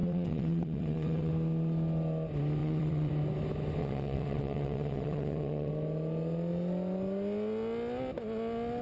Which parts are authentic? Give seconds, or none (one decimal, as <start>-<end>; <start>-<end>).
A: 1.3-2.6; 3.1-3.8; 5.7-8.8